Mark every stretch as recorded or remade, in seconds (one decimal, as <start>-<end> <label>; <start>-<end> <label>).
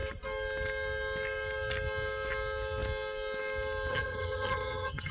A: 0.0-3.9 recorded; 3.9-5.1 remade